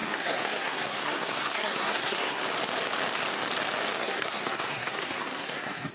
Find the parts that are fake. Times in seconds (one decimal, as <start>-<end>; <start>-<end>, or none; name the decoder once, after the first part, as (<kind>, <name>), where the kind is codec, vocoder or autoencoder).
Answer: 0.0-2.4 (codec, SNAC); 4.0-5.9